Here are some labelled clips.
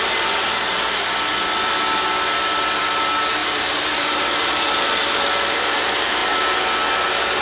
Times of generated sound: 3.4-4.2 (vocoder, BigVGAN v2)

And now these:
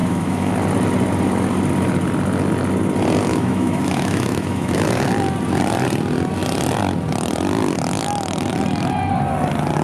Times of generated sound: 0.0-0.5 (autoencoder, DAC-VAE); 3.3-5.1

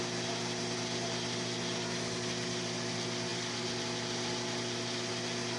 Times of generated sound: none

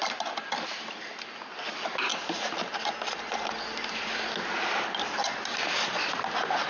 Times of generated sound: none